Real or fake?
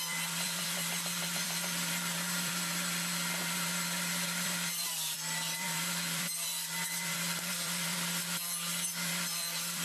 fake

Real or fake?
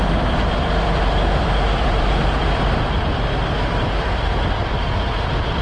fake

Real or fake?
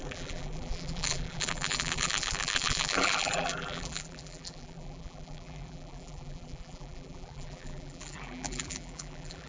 fake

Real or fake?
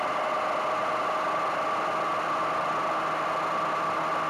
real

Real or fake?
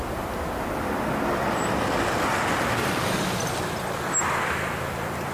real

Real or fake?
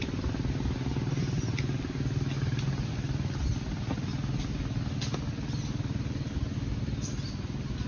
real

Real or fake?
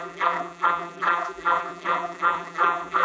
fake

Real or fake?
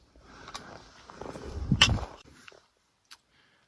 fake